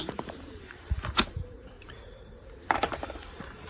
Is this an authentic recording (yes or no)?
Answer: no